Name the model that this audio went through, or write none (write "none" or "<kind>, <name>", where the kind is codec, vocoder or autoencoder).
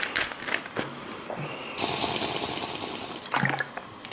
none